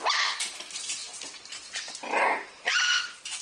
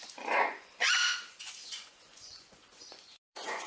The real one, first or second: first